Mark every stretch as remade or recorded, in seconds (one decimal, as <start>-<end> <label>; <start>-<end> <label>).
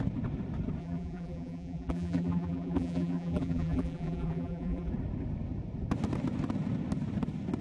0.0-0.8 recorded; 0.8-4.9 remade; 4.9-7.6 recorded